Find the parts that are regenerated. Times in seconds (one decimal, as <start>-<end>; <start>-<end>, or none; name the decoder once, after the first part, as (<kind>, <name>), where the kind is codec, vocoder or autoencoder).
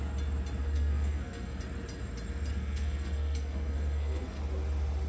0.6-1.6 (codec, SNAC); 2.5-4.4